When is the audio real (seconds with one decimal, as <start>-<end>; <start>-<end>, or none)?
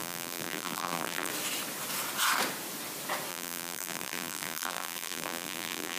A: 1.3-3.3